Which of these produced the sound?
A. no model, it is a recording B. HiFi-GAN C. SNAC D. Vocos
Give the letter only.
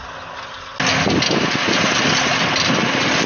A